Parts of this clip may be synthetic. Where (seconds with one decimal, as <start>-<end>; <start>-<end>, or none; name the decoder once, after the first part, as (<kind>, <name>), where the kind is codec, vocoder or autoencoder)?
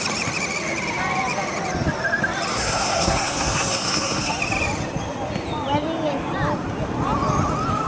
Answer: 2.5-4.3 (codec, SNAC)